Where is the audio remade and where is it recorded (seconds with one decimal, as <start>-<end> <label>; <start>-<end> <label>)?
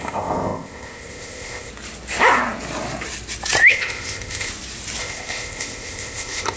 0.0-1.7 remade; 1.7-3.7 recorded; 3.7-4.5 remade; 4.5-5.0 recorded; 5.0-6.6 remade